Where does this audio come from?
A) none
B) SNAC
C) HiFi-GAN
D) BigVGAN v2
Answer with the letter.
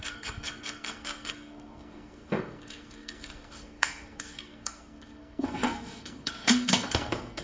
B